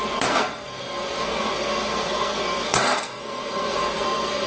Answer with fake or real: fake